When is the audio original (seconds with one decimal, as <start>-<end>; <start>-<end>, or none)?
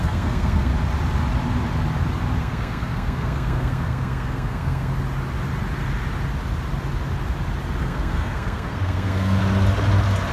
0.7-2.4; 4.9-7.8; 9.4-10.3